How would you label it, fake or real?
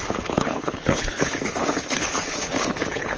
fake